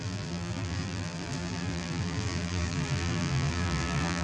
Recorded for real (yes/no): no